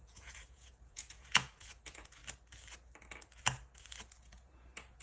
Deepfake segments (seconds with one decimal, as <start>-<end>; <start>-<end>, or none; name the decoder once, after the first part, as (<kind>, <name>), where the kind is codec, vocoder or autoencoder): 0.0-2.2 (vocoder, Vocos); 4.2-5.0